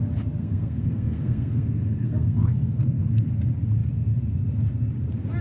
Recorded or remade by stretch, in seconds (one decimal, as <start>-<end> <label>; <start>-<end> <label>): 0.0-0.4 recorded; 0.4-3.3 remade; 3.3-5.4 recorded